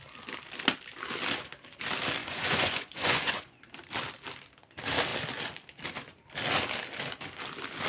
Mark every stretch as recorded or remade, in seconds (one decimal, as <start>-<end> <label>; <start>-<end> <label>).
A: 0.0-2.2 recorded; 2.2-3.7 remade; 3.7-7.9 recorded